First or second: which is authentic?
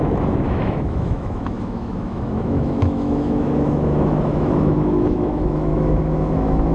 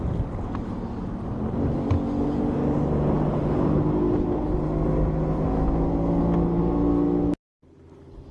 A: second